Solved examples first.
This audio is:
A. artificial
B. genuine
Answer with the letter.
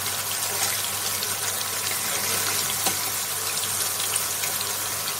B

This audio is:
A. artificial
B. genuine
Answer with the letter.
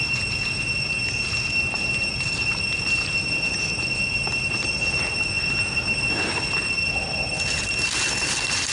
B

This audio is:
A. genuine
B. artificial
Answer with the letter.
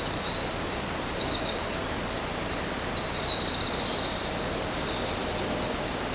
B